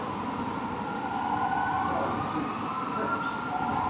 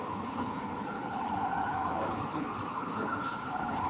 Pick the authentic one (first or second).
first